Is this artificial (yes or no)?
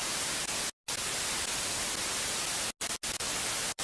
no